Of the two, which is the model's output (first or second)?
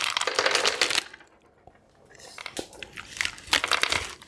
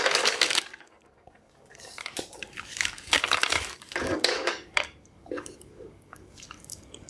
second